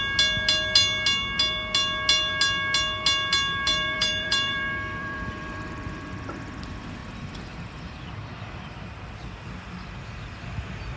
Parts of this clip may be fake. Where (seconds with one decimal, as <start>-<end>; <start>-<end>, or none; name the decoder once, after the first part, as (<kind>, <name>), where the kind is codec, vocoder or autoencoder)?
3.7-5.7 (vocoder, BigVGAN v2); 7.0-8.9